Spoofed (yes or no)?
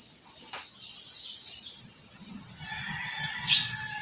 no